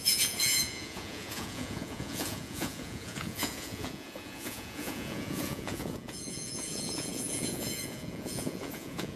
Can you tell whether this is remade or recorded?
remade